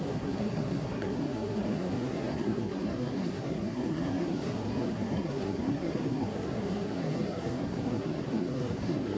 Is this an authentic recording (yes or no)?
no